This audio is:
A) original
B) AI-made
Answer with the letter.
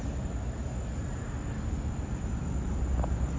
A